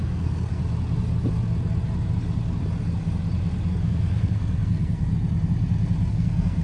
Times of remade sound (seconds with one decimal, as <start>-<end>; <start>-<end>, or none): 0.0-0.6; 3.7-5.1; 6.1-6.6